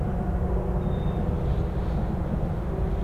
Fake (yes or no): no